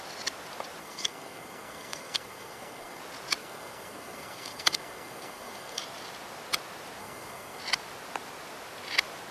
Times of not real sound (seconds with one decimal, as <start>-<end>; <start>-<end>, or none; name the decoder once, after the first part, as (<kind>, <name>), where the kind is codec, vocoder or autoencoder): 0.8-3.0 (codec, SNAC); 3.4-5.8; 7.0-7.6